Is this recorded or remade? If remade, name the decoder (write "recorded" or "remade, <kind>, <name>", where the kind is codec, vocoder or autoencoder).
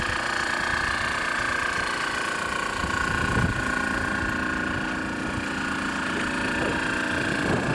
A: recorded